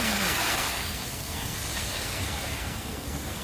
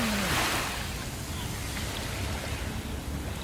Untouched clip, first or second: second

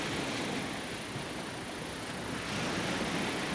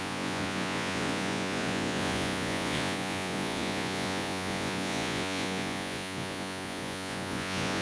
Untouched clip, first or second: first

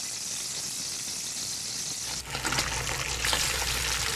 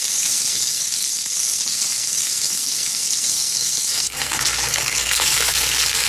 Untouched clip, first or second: first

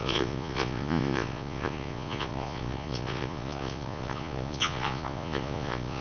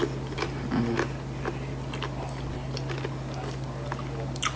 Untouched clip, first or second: second